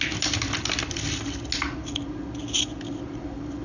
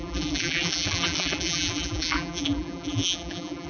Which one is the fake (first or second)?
second